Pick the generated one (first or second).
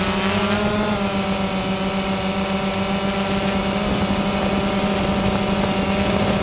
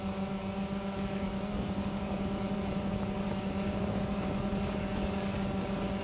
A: second